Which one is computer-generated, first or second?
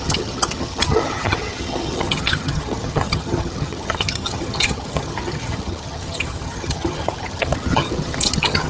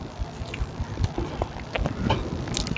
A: first